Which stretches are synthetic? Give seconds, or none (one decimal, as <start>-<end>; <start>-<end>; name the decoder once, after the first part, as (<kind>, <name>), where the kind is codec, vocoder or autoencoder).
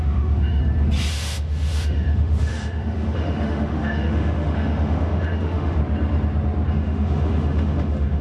0.0-0.6 (autoencoder, DAC-VAE); 1.1-5.8; 6.7-8.2